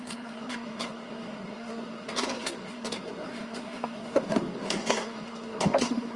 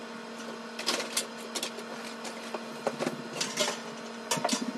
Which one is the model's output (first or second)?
first